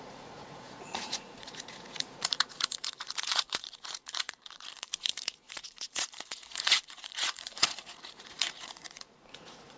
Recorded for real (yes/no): no